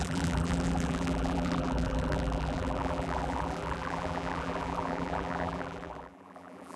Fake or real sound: fake